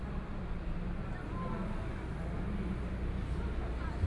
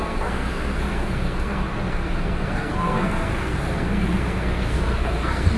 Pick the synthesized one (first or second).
second